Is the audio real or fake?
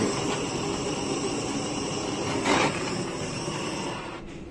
fake